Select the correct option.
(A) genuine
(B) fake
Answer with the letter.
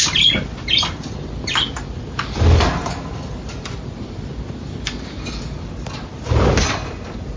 A